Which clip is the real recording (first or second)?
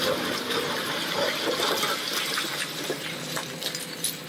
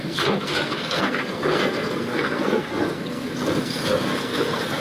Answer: first